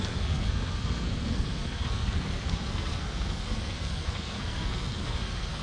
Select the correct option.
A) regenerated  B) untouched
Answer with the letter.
A